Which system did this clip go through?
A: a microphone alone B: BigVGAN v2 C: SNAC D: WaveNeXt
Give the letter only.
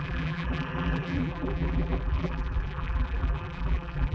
B